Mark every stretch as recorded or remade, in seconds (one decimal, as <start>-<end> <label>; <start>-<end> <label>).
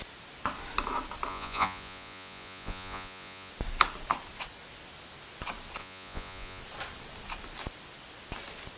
0.0-1.3 recorded; 1.3-3.5 remade; 3.5-5.8 recorded; 5.8-6.6 remade; 6.6-8.8 recorded